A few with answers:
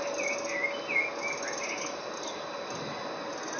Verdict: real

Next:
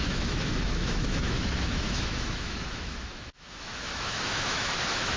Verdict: fake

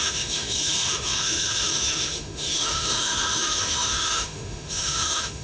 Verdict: fake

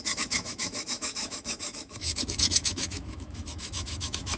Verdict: fake